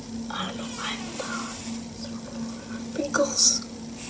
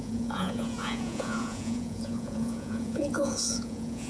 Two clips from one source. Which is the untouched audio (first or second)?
first